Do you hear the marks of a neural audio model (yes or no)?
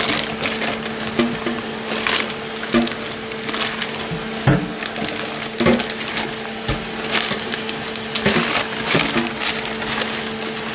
no